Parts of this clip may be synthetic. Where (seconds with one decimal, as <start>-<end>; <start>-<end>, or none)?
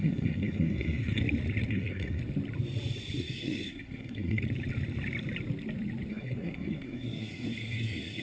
0.0-1.2; 1.7-2.2; 3.2-4.4; 6.1-8.2